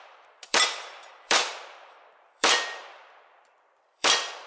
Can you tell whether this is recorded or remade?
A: remade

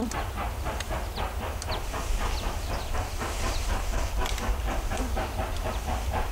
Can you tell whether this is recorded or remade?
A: recorded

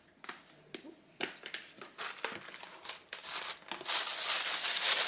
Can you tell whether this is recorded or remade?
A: recorded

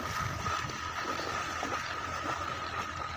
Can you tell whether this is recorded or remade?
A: recorded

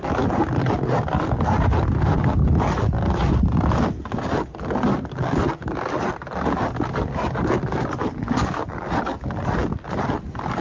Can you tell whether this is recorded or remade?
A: recorded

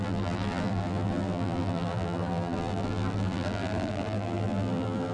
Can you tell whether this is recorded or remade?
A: remade